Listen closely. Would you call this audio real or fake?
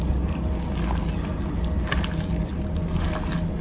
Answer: real